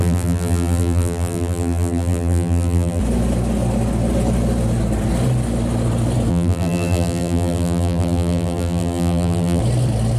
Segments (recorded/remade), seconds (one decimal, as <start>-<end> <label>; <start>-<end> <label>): 0.0-3.0 remade; 3.0-6.3 recorded; 6.3-9.6 remade; 9.6-10.2 recorded